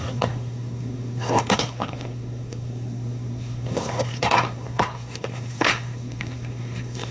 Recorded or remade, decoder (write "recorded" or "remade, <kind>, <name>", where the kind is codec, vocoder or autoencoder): remade, codec, SNAC